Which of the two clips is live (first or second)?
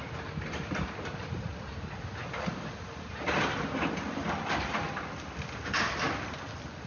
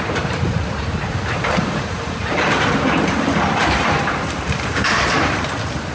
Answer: first